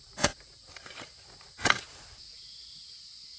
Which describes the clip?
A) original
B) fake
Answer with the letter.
A